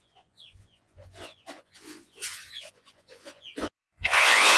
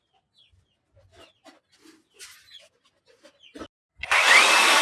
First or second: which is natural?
second